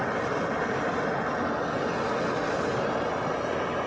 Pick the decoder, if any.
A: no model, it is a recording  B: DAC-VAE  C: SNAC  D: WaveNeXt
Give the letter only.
A